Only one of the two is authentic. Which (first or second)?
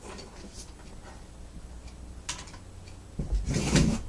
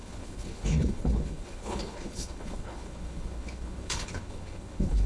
first